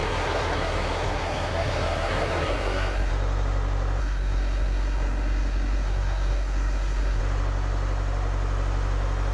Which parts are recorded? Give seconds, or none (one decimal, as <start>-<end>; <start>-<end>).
3.1-4.0; 7.2-9.3